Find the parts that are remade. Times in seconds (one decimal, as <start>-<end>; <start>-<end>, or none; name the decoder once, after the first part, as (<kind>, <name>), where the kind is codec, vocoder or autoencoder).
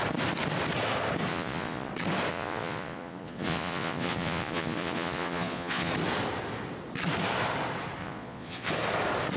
1.3-1.9 (vocoder, Vocos); 2.3-5.9; 8.0-8.7